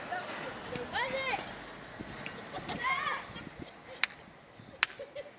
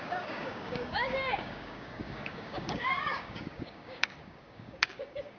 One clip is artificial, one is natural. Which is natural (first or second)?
first